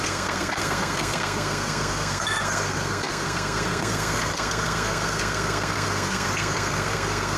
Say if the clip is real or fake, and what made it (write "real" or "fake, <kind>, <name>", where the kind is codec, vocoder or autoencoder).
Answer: fake, codec, SNAC